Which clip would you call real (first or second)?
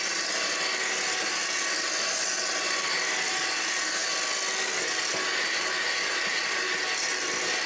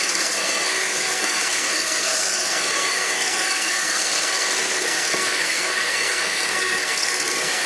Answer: first